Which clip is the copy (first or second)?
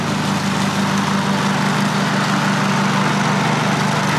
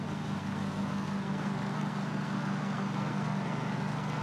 second